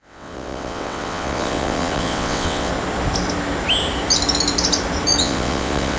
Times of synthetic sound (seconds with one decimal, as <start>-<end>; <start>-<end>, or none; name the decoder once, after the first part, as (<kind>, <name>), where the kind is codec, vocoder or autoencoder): 0.0-2.7 (vocoder, WaveNeXt); 5.2-6.0